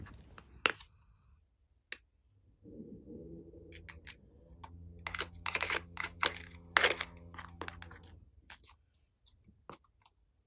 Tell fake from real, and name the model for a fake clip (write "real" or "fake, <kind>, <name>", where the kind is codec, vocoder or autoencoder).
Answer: real